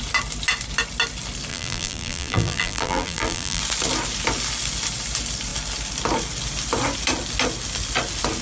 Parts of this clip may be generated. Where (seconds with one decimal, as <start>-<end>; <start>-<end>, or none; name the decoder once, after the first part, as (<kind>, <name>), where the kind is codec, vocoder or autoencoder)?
1.5-3.6 (vocoder, BigVGAN v2)